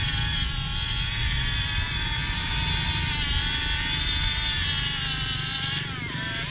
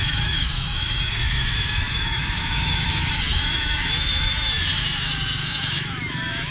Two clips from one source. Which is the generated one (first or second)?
second